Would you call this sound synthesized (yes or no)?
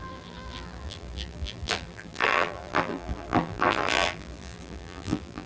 yes